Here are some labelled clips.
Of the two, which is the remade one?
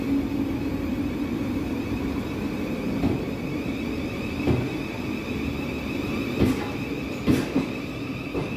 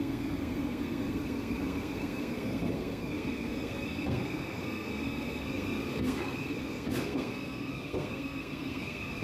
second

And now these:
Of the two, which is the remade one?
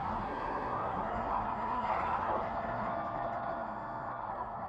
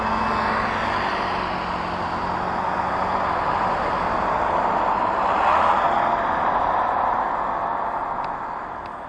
first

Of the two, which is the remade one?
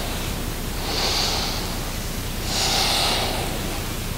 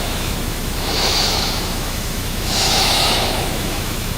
second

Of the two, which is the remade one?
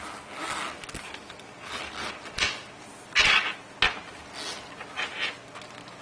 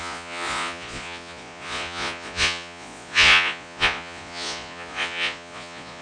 second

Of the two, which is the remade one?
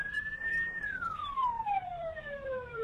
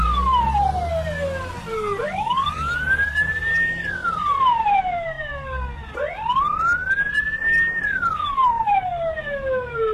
first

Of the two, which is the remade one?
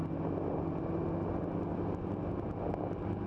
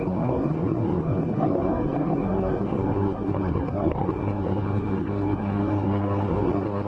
second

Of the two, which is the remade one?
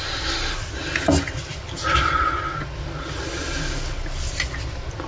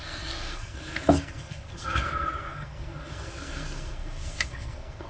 second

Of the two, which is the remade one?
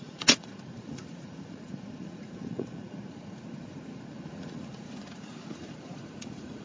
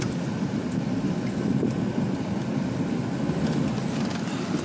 first